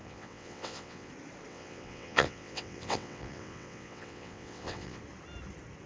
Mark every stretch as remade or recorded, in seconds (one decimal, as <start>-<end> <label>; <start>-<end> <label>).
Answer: 0.0-1.1 remade; 1.1-1.5 recorded; 1.5-5.0 remade; 5.0-5.9 recorded